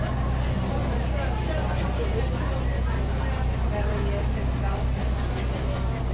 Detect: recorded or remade recorded